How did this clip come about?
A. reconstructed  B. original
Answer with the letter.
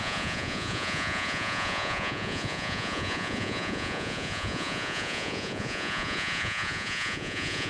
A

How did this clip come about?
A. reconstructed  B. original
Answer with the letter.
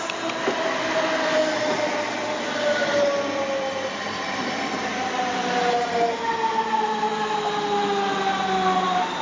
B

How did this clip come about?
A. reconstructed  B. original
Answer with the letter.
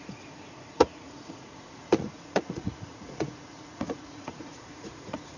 A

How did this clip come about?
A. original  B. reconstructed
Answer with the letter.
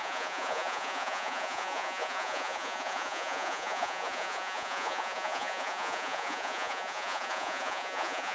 B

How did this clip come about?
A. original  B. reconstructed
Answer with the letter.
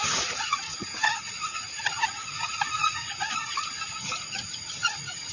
B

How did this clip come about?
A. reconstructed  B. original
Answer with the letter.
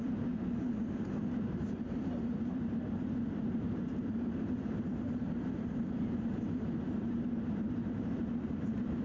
A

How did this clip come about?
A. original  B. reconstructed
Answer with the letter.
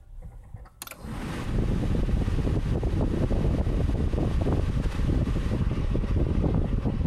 A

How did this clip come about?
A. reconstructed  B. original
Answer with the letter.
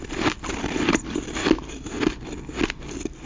B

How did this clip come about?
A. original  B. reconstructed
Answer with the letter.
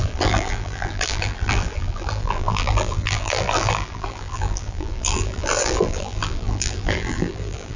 B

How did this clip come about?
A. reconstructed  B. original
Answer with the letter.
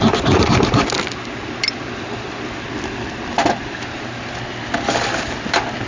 B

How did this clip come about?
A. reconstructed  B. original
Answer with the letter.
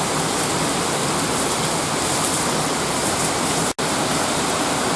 B